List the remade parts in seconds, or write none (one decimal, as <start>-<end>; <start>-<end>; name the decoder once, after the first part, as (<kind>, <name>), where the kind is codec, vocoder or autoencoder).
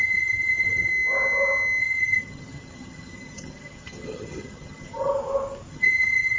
0.0-0.9 (vocoder, HiFi-GAN); 1.8-5.1; 5.7-6.4